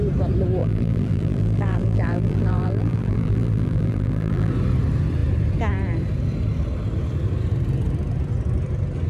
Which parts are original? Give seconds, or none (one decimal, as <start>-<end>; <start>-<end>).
0.0-0.6; 4.5-9.1